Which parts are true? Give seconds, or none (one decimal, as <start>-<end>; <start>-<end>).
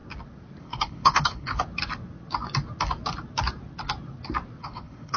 0.0-0.6; 1.5-4.6